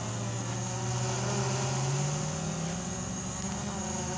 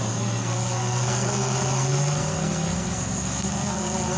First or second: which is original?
first